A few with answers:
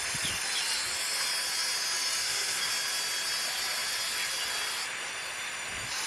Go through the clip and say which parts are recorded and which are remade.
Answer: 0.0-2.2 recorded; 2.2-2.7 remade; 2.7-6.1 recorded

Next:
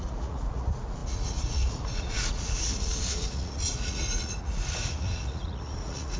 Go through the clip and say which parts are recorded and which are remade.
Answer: 0.0-6.2 remade

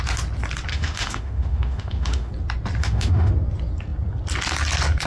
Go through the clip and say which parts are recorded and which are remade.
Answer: 0.0-0.7 recorded; 0.7-2.3 remade; 2.3-2.8 recorded; 2.8-3.3 remade; 3.3-5.1 recorded

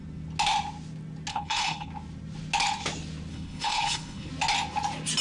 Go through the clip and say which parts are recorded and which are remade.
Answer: 0.0-1.3 recorded; 1.3-1.9 remade; 1.9-3.3 recorded; 3.3-4.3 remade; 4.3-5.2 recorded

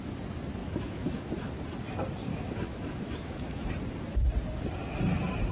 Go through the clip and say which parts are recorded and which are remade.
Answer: 0.0-0.6 recorded; 0.6-1.3 remade; 1.3-2.3 recorded; 2.3-3.7 remade; 3.7-5.5 recorded

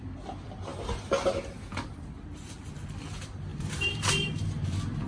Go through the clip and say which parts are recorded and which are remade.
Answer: 0.0-0.7 recorded; 0.7-1.4 remade; 1.4-3.5 recorded; 3.5-4.3 remade; 4.3-5.1 recorded

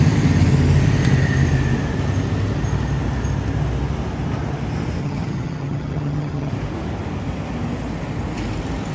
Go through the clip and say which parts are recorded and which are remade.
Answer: 0.0-5.0 recorded; 5.0-6.5 remade; 6.5-8.9 recorded

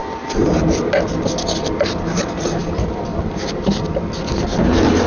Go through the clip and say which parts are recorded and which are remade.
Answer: 0.0-5.1 recorded